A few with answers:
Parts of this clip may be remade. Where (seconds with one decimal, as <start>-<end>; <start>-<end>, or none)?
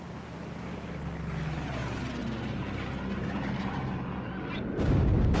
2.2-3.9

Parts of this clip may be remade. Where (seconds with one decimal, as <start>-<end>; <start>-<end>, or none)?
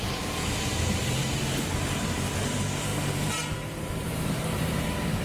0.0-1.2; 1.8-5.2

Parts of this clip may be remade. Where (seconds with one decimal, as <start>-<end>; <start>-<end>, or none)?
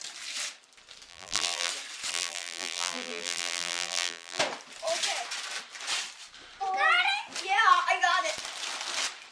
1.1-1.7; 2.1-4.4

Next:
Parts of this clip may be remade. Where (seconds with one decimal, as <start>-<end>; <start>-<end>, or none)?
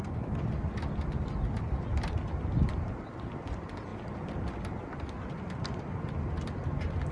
none